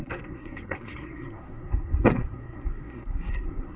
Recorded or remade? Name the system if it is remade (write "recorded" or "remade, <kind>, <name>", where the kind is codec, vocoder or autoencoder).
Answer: remade, codec, SNAC